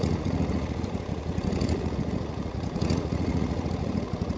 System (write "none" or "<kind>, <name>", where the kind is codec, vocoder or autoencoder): vocoder, Vocos